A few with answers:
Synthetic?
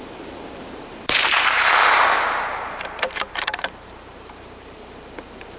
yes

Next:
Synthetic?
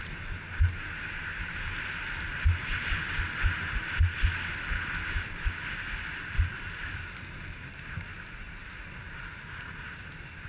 no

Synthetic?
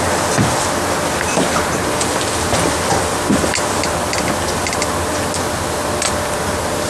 no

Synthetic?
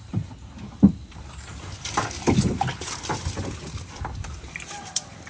no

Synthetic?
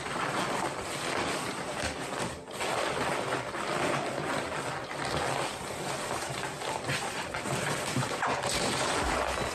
yes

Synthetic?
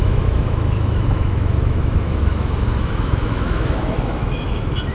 yes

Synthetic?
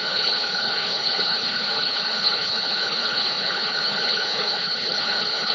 yes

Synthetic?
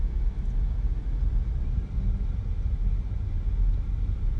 no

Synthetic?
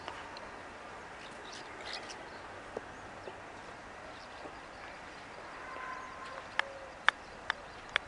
no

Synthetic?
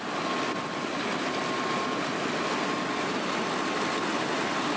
no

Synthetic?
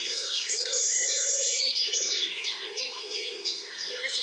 yes